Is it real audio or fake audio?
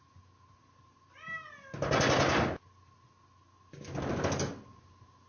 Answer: real